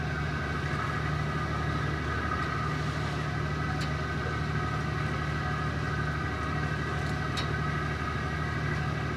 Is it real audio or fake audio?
real